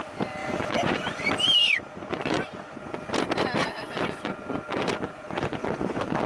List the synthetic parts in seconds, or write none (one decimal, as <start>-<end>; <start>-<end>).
0.4-1.3; 1.9-3.0; 3.6-6.3